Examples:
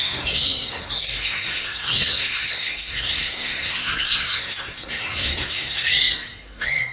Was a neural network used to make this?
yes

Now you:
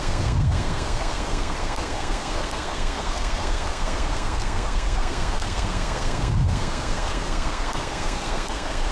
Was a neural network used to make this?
yes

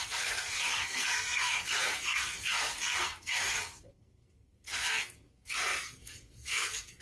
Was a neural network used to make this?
yes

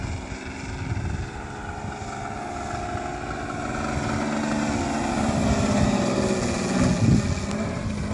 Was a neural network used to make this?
no